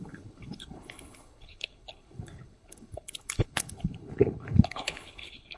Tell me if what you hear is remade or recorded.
remade